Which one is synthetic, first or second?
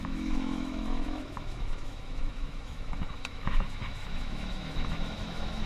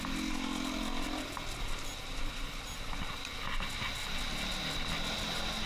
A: first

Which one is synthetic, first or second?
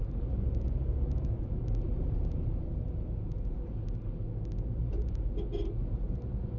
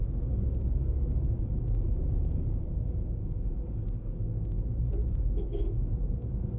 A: second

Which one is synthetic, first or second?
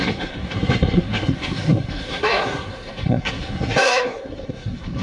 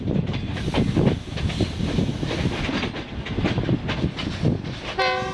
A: first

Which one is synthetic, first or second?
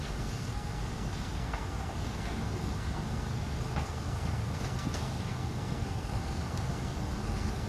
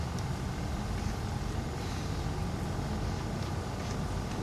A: first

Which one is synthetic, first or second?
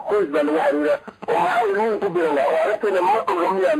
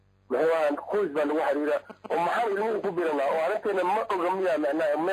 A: first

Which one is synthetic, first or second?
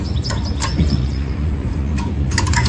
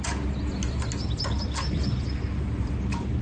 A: first